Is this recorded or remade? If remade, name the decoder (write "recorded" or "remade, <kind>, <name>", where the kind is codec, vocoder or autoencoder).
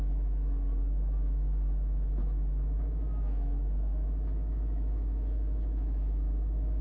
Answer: remade, autoencoder, DAC-VAE